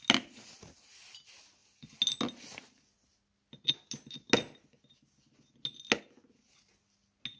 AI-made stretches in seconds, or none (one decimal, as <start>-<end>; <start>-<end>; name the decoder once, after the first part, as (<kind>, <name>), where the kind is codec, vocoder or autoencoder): none